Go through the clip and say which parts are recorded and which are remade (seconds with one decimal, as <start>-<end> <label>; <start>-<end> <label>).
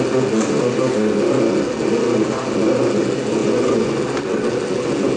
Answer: 0.0-3.4 recorded; 3.4-4.0 remade; 4.0-5.2 recorded